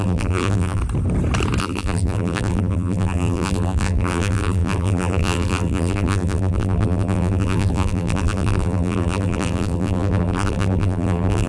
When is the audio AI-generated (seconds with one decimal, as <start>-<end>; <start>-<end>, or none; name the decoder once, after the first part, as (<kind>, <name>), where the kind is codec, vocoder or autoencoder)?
0.0-0.8 (vocoder, BigVGAN v2); 1.6-11.5